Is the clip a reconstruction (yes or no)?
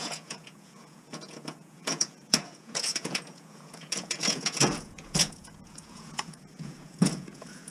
yes